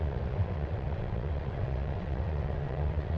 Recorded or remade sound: remade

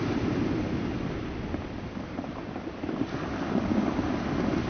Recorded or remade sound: recorded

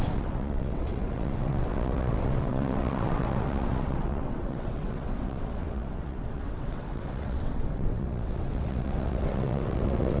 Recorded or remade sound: remade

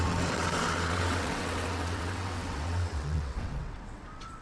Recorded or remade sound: remade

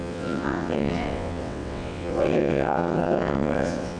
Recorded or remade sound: remade